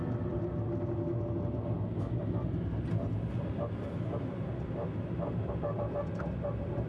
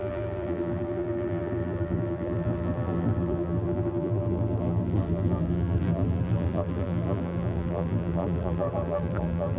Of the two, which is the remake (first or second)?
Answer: second